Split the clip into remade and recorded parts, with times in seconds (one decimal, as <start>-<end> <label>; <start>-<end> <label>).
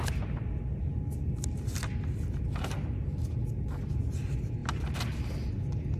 0.0-6.0 recorded